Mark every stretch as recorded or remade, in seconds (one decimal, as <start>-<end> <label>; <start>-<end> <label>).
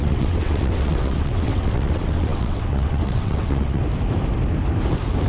0.0-3.8 remade; 3.8-5.3 recorded